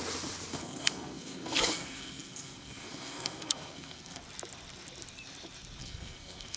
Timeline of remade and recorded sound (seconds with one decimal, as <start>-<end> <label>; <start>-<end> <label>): 0.0-0.5 recorded; 0.5-4.2 remade; 4.2-5.8 recorded; 5.8-6.6 remade